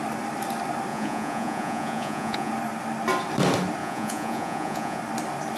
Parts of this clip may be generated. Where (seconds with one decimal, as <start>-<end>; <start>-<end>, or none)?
0.9-2.5; 3.8-5.0